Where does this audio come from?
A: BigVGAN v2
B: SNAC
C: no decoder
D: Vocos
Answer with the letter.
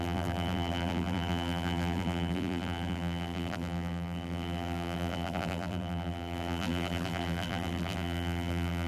A